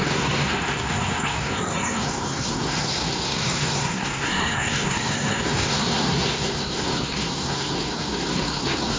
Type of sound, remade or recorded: remade